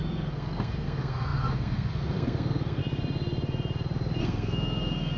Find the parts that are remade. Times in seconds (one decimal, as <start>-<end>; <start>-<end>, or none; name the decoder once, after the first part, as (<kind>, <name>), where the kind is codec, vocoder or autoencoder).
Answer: 0.0-2.8 (codec, SNAC); 4.2-5.2